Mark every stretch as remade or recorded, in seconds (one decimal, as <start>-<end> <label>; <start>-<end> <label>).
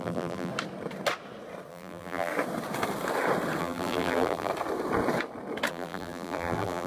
0.0-0.5 remade; 0.5-1.7 recorded; 1.7-2.3 remade; 2.3-3.6 recorded; 3.6-4.5 remade; 4.5-5.7 recorded; 5.7-6.9 remade